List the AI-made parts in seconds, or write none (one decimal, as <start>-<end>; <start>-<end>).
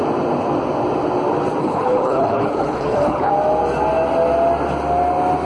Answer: 1.6-3.3